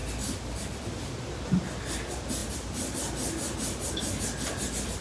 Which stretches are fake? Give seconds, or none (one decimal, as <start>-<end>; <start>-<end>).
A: none